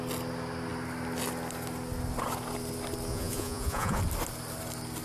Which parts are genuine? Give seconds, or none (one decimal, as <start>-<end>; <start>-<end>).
0.0-3.1; 4.0-5.0